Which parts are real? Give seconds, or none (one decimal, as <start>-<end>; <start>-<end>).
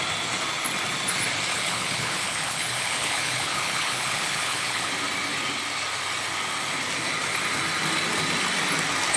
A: 0.0-1.5; 4.9-9.2